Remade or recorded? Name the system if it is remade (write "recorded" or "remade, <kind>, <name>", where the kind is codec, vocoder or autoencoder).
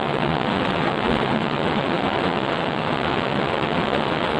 remade, vocoder, WaveNeXt